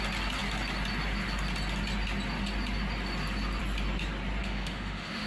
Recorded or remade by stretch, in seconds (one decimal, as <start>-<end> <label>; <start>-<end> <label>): 0.0-4.4 recorded; 4.4-5.3 remade